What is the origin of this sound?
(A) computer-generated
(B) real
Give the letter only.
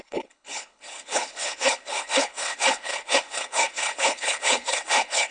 A